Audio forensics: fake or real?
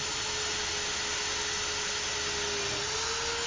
real